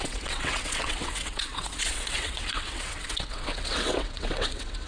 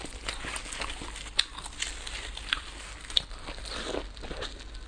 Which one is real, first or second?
second